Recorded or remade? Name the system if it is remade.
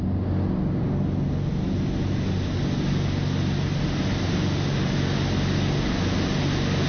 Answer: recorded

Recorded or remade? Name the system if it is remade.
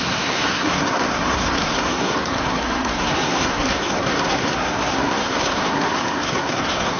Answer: remade, codec, SNAC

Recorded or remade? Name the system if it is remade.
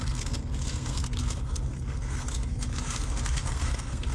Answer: remade, codec, SNAC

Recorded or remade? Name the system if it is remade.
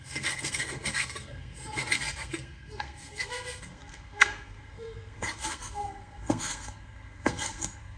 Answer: remade, codec, SNAC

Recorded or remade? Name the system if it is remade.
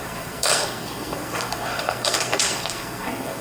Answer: remade, codec, SNAC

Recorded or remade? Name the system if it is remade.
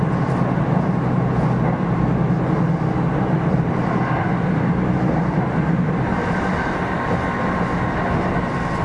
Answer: recorded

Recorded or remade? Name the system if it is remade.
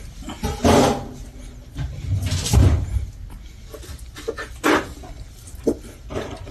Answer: recorded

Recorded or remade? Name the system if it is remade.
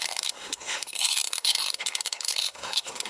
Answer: remade, codec, SNAC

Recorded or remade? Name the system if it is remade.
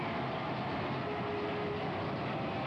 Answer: recorded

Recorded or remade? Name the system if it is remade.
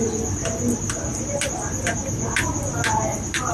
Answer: recorded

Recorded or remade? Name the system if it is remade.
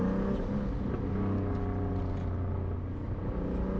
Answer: recorded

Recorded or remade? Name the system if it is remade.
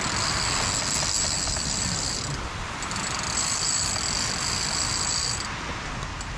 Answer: recorded